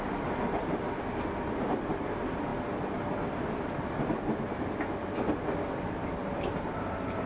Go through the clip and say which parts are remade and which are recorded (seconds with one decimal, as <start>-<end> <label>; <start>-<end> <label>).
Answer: 0.0-7.3 recorded

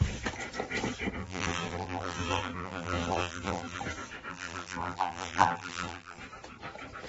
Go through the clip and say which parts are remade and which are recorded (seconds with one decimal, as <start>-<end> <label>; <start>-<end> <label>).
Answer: 0.0-1.2 recorded; 1.2-3.8 remade; 3.8-4.3 recorded; 4.3-6.2 remade; 6.2-7.1 recorded

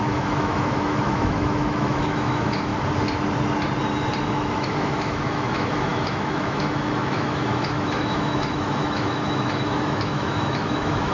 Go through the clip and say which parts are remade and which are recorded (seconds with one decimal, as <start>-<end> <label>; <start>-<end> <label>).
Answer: 0.0-2.7 remade; 2.7-4.2 recorded; 4.2-11.1 remade

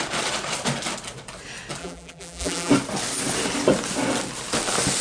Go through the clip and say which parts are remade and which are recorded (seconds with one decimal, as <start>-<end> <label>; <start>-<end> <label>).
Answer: 0.0-1.8 recorded; 1.8-2.7 remade; 2.7-5.0 recorded